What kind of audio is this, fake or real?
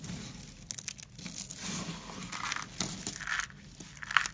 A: real